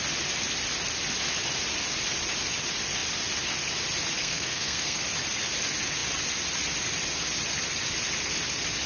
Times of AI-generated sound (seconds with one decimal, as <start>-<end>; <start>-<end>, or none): 4.2-5.0